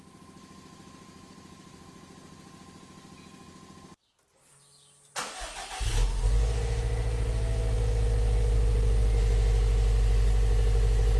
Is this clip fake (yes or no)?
no